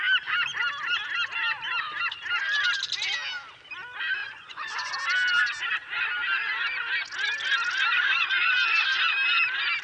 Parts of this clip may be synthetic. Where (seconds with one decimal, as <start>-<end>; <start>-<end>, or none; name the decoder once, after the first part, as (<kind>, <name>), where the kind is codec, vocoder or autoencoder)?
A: 4.2-4.9 (vocoder, Vocos); 7.9-8.5